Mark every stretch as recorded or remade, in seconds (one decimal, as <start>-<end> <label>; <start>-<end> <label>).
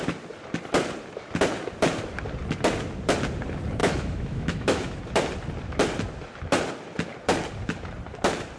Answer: 0.0-3.8 recorded; 3.8-5.0 remade; 5.0-8.6 recorded